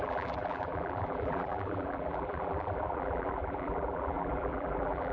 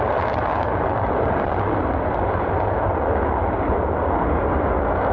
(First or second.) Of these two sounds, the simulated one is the first